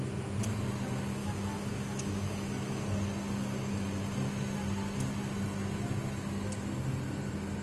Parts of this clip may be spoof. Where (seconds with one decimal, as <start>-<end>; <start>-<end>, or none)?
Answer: 1.2-2.8

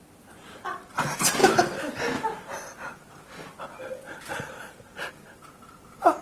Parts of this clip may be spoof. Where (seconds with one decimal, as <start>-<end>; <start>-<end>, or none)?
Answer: 1.4-2.0

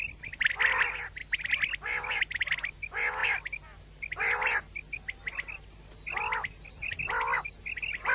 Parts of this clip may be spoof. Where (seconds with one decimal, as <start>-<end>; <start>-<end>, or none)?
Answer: none